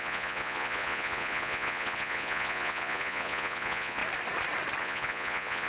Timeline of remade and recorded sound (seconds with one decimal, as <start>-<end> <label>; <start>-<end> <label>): 0.0-4.0 remade; 4.0-4.8 recorded; 4.8-5.7 remade